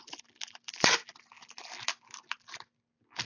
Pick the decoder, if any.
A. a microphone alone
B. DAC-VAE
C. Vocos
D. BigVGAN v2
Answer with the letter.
A